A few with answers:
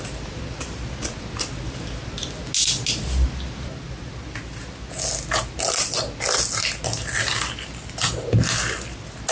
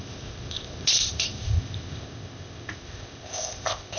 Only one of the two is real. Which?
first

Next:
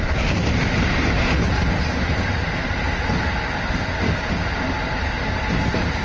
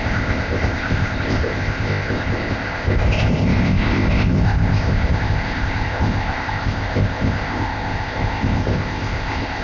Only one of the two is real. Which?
first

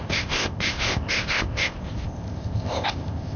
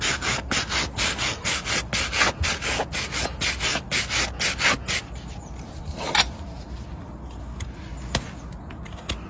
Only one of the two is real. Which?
second